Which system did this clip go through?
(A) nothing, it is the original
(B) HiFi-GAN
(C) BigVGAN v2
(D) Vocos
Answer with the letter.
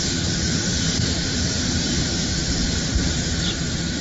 C